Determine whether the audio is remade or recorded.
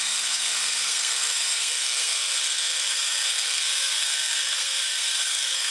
remade